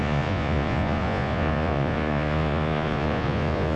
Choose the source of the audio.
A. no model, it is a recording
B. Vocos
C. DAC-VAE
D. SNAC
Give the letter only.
B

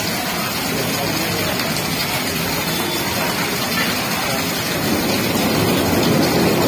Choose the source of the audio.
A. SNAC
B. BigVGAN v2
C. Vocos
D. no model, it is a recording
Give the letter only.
D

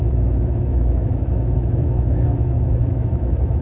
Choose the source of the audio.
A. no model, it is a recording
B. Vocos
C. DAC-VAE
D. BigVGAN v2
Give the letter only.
C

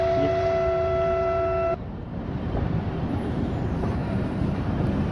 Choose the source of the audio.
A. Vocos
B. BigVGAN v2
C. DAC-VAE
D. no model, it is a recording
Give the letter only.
B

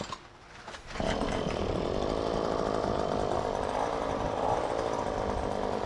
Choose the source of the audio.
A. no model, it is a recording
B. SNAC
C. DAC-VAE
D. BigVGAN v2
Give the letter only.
D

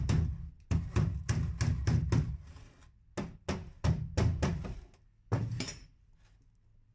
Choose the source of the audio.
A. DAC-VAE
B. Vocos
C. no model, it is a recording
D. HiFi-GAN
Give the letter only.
C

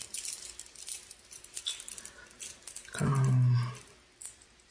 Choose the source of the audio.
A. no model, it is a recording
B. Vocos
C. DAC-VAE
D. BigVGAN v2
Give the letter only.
A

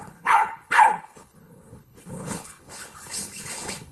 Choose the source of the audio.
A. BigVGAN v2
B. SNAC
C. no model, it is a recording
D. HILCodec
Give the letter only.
D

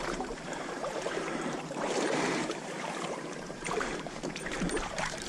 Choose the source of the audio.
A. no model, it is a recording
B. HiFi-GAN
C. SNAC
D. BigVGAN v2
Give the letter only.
D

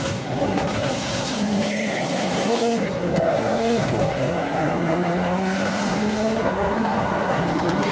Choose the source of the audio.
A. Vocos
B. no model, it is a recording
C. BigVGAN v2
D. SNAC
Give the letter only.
D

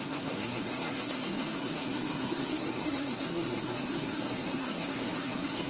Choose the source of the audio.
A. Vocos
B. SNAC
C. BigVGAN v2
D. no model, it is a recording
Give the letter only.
B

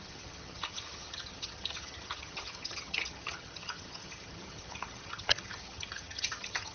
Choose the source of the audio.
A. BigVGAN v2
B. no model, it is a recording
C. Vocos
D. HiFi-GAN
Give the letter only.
D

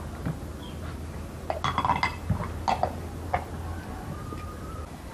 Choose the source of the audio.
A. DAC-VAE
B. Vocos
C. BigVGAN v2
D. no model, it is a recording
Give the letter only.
D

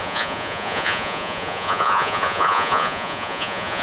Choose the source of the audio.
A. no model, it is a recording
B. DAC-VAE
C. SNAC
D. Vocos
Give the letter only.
D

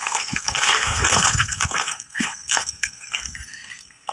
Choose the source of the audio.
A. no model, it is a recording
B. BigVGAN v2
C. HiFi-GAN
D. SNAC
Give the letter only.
D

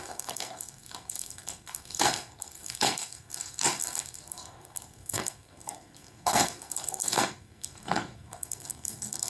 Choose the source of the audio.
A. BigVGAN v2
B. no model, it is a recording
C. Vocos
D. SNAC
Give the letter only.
D